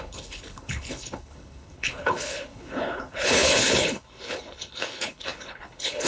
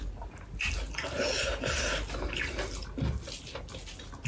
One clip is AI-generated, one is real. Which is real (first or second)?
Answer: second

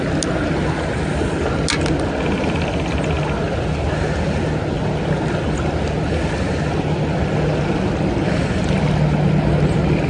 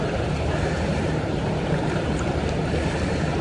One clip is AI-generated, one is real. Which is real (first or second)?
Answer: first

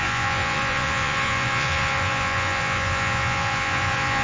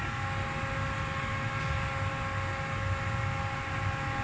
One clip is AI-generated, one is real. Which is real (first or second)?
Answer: second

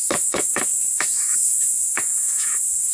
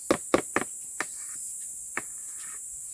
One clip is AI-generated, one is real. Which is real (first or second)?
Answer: second